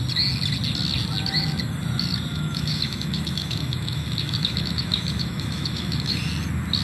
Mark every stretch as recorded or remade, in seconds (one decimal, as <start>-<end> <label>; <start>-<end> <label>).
0.0-2.3 recorded; 2.3-6.2 remade; 6.2-6.8 recorded